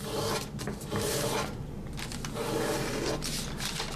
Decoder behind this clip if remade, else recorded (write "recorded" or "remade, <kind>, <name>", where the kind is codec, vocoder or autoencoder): recorded